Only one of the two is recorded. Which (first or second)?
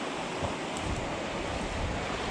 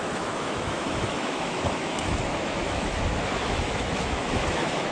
first